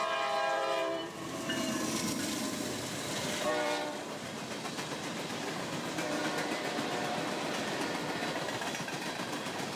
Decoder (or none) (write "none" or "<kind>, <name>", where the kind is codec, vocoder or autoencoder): vocoder, BigVGAN v2